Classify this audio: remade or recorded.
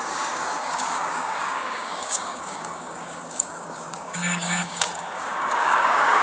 remade